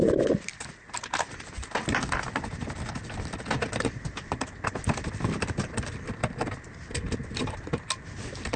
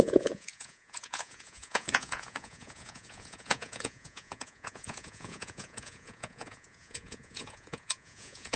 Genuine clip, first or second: first